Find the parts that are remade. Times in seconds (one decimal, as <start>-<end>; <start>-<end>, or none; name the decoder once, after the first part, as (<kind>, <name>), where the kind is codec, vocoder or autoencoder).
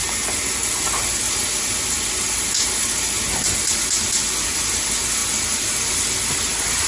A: none